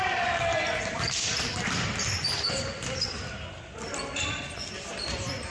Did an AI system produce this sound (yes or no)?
yes